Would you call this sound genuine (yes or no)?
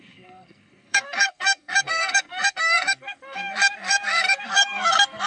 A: no